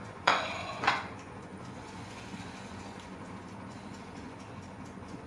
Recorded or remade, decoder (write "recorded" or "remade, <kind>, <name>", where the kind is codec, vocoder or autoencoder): remade, vocoder, Vocos